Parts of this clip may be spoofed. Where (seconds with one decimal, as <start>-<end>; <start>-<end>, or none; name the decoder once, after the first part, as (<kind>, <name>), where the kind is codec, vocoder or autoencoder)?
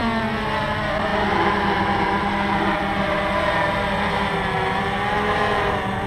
none